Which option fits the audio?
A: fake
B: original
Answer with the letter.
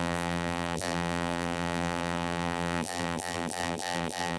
A